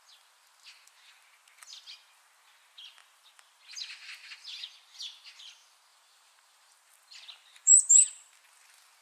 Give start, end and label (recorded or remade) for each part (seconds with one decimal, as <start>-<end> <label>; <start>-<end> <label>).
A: 0.0-5.9 recorded; 5.9-8.3 remade; 8.3-9.0 recorded

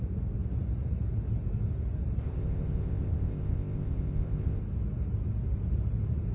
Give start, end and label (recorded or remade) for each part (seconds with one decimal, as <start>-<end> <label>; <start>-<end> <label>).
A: 0.0-2.2 recorded; 2.2-4.6 remade; 4.6-6.3 recorded